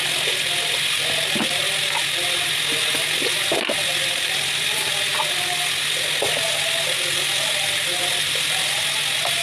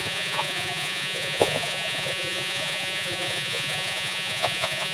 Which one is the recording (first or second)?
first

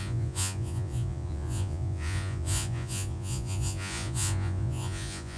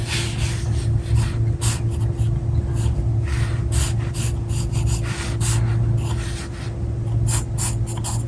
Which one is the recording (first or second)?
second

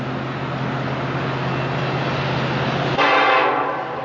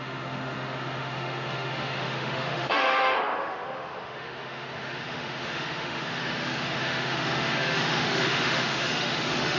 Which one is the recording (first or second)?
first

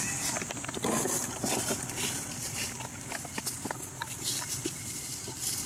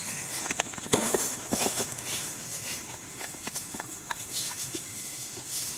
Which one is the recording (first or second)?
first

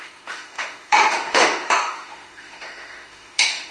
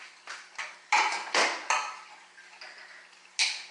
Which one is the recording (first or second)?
second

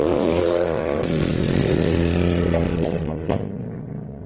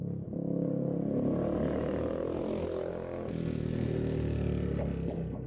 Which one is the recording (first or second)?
second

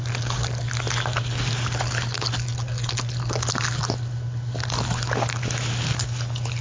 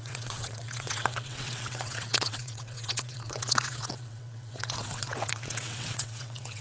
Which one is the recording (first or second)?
first